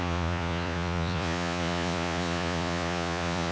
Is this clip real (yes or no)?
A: no